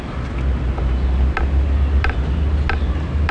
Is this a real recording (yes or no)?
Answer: yes